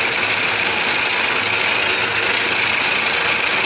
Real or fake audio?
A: real